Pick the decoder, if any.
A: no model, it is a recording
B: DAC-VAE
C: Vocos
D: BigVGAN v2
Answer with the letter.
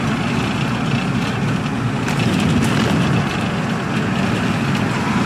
A